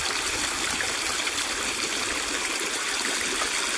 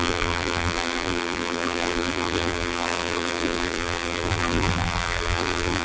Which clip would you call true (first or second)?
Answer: first